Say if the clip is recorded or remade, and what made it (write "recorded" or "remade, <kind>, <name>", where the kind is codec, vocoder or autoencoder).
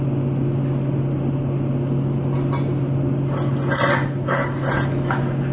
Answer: recorded